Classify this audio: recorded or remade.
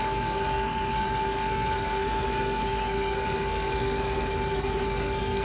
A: remade